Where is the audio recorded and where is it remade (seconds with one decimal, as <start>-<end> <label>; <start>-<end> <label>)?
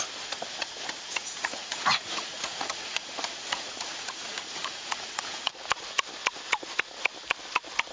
0.0-1.2 recorded; 1.2-5.6 remade; 5.6-7.9 recorded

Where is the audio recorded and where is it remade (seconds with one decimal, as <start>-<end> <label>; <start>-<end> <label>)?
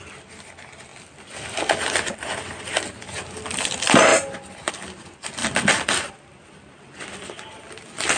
0.0-8.2 recorded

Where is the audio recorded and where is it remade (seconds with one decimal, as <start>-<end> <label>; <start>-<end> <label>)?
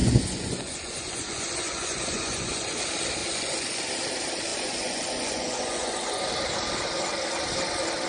0.0-2.8 remade; 2.8-3.2 recorded; 3.2-3.8 remade; 3.8-4.5 recorded; 4.5-6.3 remade; 6.3-8.1 recorded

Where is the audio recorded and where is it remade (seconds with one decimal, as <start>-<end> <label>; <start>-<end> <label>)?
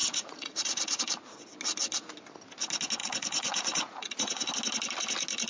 0.0-1.0 remade; 1.0-3.0 recorded; 3.0-4.5 remade; 4.5-5.5 recorded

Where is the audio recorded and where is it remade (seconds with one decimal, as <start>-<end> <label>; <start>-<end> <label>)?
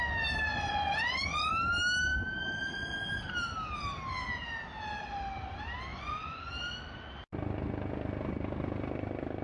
0.0-0.5 recorded; 0.5-1.5 remade; 1.5-5.9 recorded; 5.9-6.5 remade; 6.5-9.4 recorded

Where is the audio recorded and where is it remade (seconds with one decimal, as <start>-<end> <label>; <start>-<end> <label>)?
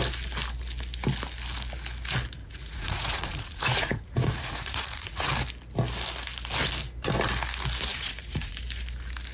0.0-2.4 recorded; 2.4-5.3 remade; 5.3-7.9 recorded; 7.9-8.6 remade; 8.6-9.3 recorded